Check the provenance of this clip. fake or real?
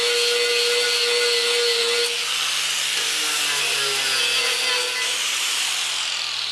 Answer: real